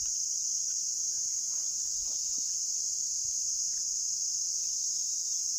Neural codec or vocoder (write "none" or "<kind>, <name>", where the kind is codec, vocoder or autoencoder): vocoder, BigVGAN v2